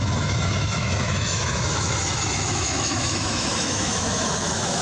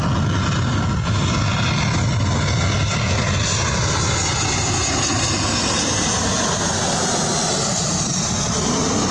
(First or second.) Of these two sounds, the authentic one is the second